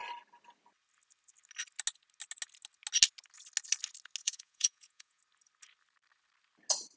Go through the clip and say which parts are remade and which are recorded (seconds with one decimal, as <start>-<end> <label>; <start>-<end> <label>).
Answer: 0.0-4.2 recorded; 4.2-5.2 remade; 5.2-7.0 recorded